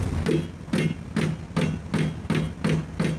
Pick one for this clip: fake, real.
real